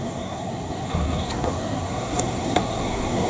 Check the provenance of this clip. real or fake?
fake